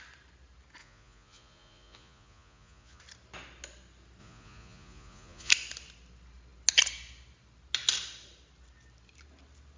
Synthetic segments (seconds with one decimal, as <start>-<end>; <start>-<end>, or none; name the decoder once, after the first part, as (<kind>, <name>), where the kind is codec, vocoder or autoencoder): 0.8-3.0 (vocoder, Vocos); 4.2-5.5